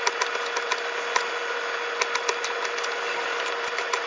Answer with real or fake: real